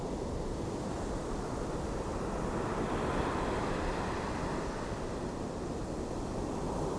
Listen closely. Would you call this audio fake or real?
real